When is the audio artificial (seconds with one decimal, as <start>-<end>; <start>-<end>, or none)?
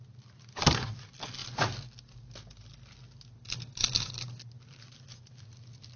none